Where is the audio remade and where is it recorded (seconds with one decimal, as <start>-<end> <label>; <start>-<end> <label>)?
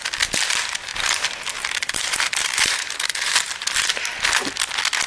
0.0-0.9 recorded; 0.9-4.0 remade; 4.0-5.1 recorded